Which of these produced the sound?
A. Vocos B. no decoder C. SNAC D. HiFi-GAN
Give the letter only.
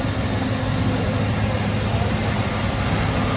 B